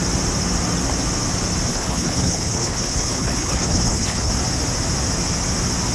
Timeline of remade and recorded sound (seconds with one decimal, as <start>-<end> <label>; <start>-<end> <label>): 0.0-1.7 recorded; 1.7-4.3 remade; 4.3-5.9 recorded